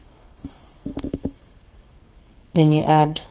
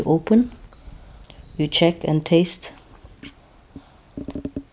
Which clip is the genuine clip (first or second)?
second